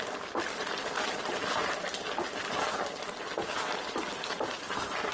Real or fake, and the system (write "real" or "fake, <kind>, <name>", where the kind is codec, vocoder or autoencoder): fake, vocoder, BigVGAN v2